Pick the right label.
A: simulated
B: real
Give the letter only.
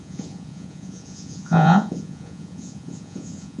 A